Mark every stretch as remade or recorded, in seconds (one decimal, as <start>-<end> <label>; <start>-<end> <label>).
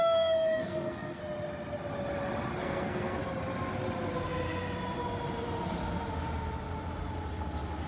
0.0-1.2 remade; 1.2-2.6 recorded; 2.6-3.2 remade; 3.2-7.9 recorded